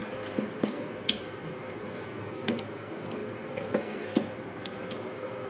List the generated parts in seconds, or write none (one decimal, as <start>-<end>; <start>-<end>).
0.0-5.5